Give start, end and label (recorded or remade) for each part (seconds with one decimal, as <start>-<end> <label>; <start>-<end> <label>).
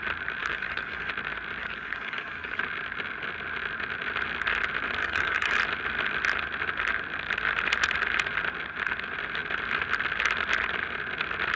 0.0-0.4 recorded; 0.4-1.1 remade; 1.1-1.6 recorded; 1.6-2.6 remade; 2.6-5.0 recorded; 5.0-5.6 remade; 5.6-11.6 recorded